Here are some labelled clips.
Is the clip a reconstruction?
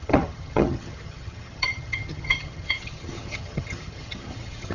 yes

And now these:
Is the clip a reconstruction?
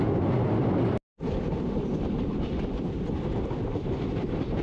no